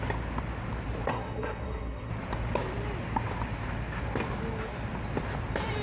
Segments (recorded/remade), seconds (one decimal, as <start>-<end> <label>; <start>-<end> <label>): 0.0-1.1 recorded; 1.1-2.1 remade; 2.1-5.8 recorded